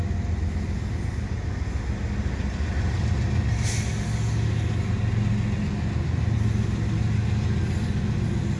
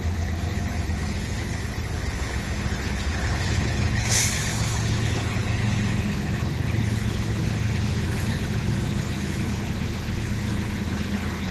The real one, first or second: first